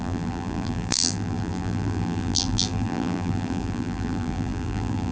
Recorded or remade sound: remade